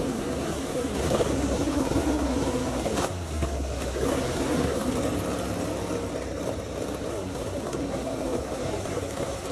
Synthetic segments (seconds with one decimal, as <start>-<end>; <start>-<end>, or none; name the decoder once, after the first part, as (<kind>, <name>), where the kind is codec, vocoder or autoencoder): 0.0-4.9 (codec, SNAC); 7.1-9.5